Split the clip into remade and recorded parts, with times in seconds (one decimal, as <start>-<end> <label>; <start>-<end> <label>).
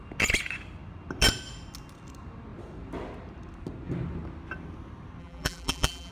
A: 0.0-5.2 recorded; 5.2-6.1 remade